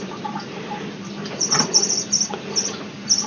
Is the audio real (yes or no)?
yes